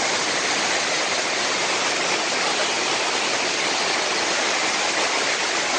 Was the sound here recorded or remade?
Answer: recorded